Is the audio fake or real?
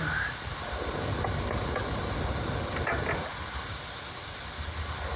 real